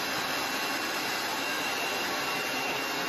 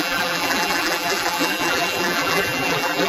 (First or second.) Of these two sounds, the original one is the first